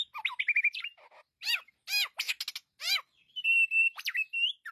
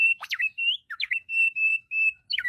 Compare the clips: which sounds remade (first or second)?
second